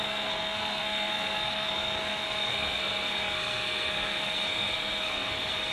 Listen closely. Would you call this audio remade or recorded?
remade